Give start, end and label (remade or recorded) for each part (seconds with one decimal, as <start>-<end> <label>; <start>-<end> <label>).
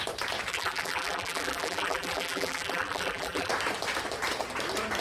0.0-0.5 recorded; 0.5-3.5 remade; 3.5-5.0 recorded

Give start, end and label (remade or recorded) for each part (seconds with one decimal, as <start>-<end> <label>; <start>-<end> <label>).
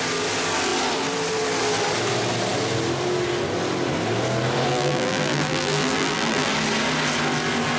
0.0-4.7 recorded; 4.7-6.5 remade; 6.5-7.8 recorded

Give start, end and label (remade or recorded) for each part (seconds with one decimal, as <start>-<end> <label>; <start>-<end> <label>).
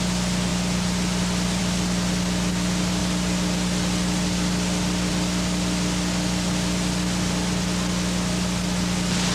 0.0-0.5 recorded; 0.5-1.6 remade; 1.6-3.0 recorded; 3.0-5.1 remade; 5.1-9.3 recorded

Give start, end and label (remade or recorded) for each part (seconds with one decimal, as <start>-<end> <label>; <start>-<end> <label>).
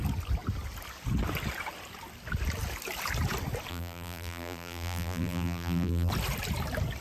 0.0-3.7 recorded; 3.7-6.1 remade; 6.1-7.0 recorded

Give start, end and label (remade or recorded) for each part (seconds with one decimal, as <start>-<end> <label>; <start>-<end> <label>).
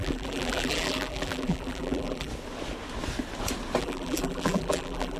0.0-2.3 remade; 2.3-3.8 recorded; 3.8-5.2 remade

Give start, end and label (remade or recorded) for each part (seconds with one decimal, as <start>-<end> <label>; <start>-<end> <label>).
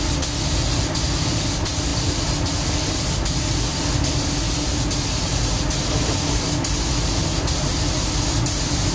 0.0-1.9 recorded; 1.9-3.1 remade; 3.1-8.9 recorded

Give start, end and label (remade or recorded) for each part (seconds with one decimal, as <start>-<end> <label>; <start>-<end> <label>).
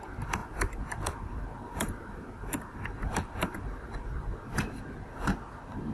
0.0-0.4 recorded; 0.4-3.9 remade; 3.9-5.9 recorded